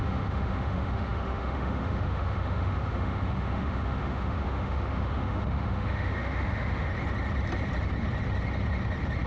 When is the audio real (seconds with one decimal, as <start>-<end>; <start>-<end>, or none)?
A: 6.9-9.3